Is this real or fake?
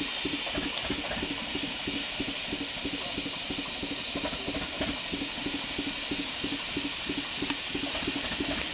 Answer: real